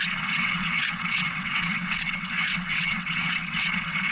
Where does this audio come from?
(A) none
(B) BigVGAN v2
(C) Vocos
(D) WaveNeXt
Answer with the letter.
D